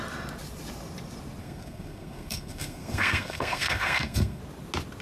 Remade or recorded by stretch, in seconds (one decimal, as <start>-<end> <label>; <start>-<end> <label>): 0.0-1.4 recorded; 1.4-4.4 remade; 4.4-5.0 recorded

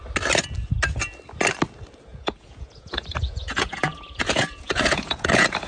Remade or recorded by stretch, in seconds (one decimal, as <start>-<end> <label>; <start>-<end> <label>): 0.0-2.1 recorded; 2.1-5.7 remade

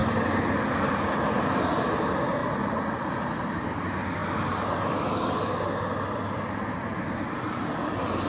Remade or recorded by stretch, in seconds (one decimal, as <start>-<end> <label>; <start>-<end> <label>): 0.0-2.4 recorded; 2.4-3.4 remade; 3.4-8.3 recorded

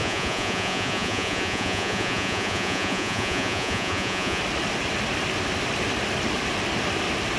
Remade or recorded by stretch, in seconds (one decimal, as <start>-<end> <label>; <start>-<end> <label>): 0.0-4.4 remade; 4.4-7.4 recorded

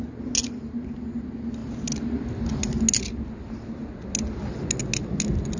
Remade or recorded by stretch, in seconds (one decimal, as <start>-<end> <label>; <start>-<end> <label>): 0.0-5.6 recorded

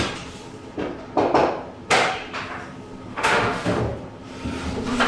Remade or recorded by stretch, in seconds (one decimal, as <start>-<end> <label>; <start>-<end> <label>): 0.0-3.1 recorded; 3.1-3.8 remade; 3.8-5.1 recorded